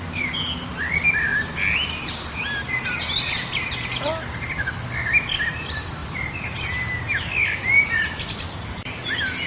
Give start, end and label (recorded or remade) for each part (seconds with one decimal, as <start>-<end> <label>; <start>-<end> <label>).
0.0-9.5 recorded